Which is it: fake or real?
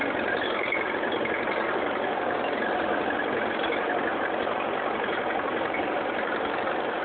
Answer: real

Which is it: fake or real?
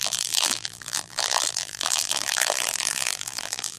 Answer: fake